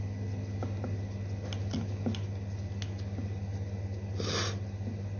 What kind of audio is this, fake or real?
real